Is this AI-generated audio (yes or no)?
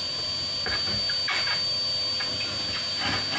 no